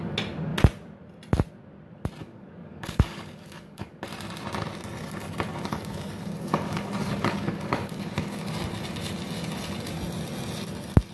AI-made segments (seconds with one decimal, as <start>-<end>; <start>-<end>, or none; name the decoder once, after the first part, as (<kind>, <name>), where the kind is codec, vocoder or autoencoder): 2.2-3.9 (codec, DAC); 5.5-8.5